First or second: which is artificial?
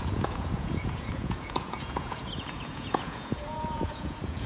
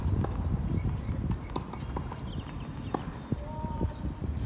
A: first